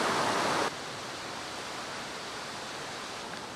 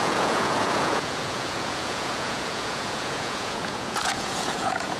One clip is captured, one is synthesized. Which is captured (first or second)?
first